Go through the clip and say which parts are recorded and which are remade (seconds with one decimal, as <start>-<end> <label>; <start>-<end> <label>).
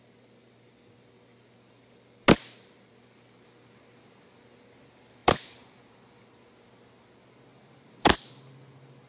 0.0-5.2 recorded; 5.2-5.8 remade; 5.8-7.5 recorded; 7.5-8.3 remade; 8.3-9.1 recorded